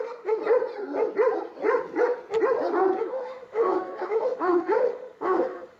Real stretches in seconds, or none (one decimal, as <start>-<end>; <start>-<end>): 0.4-3.0